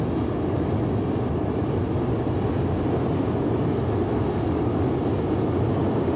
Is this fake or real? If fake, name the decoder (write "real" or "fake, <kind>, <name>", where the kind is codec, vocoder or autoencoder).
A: real